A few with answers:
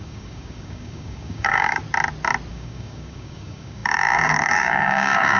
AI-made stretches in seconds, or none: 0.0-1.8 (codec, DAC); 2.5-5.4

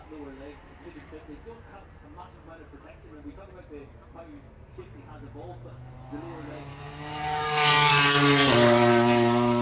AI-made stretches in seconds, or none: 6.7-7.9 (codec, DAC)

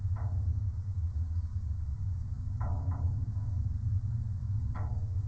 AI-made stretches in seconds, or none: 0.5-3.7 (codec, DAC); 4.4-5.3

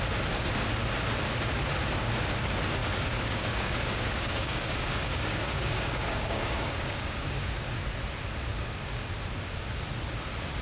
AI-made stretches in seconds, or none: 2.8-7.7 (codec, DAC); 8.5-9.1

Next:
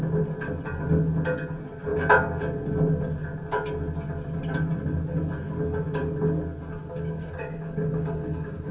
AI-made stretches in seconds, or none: 6.8-8.7 (codec, DAC)